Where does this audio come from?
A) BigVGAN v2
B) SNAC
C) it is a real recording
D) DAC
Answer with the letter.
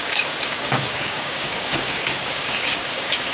D